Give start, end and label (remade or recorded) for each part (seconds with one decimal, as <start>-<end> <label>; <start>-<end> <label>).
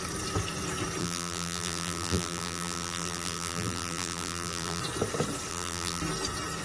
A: 0.0-1.0 recorded; 1.0-4.8 remade; 4.8-5.5 recorded; 5.5-6.0 remade; 6.0-6.6 recorded